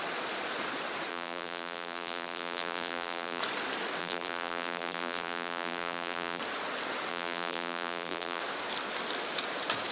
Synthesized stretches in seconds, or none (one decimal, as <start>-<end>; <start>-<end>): 1.1-3.4; 4.0-6.4; 7.1-8.4